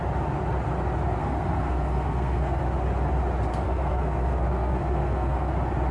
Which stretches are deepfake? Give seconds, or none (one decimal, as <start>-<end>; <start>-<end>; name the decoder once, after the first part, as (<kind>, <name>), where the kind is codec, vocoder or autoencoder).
1.2-2.6 (codec, SNAC); 3.5-5.5